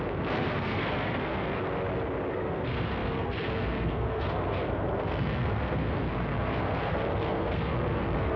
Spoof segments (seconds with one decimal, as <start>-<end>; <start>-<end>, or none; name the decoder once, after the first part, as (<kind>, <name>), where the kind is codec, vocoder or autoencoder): 0.0-1.6 (codec, SNAC); 2.3-8.4